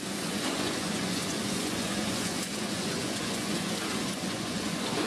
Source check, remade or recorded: remade